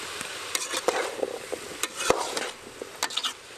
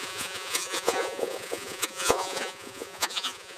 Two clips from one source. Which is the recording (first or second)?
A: first